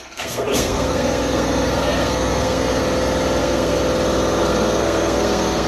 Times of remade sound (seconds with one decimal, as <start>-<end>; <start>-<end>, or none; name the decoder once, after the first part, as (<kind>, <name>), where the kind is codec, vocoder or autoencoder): 0.0-2.8 (codec, SNAC); 3.4-3.8; 4.4-5.7